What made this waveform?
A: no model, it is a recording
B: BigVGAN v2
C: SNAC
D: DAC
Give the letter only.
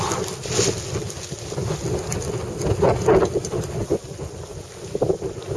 A